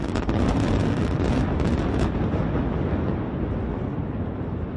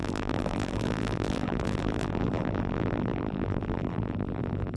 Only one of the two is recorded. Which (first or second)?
first